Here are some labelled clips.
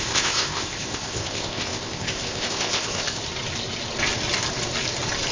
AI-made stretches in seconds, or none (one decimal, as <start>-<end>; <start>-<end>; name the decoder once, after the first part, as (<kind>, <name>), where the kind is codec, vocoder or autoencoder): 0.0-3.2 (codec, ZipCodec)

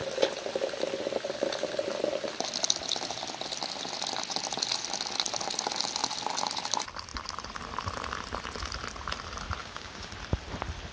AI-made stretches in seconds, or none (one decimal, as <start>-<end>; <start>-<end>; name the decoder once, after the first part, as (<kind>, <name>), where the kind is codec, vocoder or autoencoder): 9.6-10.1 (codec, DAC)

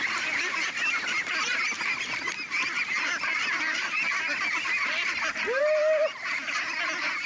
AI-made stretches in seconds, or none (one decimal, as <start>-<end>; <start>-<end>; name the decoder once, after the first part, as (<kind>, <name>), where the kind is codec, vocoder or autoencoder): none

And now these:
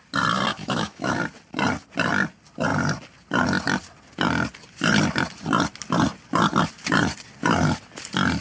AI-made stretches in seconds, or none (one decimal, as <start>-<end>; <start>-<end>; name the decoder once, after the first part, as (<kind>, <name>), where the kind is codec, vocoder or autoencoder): 0.5-1.2 (autoencoder, DAC-VAE)